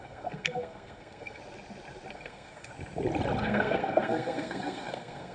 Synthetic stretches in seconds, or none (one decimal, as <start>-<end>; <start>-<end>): 0.0-1.4; 2.1-2.7; 3.4-5.3